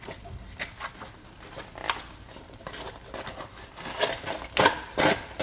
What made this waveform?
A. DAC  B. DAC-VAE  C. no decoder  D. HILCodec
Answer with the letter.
C